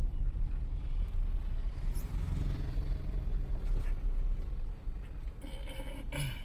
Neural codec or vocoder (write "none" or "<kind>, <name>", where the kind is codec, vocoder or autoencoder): none